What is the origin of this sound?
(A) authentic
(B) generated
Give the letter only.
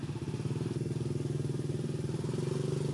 A